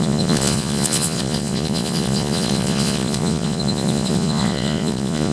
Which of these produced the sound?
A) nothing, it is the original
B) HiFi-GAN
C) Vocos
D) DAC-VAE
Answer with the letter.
C